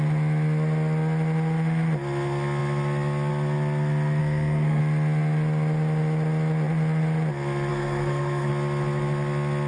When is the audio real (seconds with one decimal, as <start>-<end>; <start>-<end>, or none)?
0.0-4.2; 4.8-7.7; 8.5-9.7